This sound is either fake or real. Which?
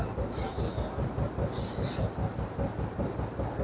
real